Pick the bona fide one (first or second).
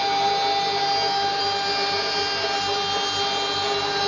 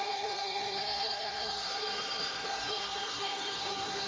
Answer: first